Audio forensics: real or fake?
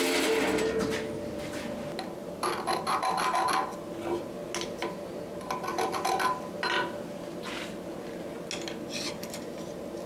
real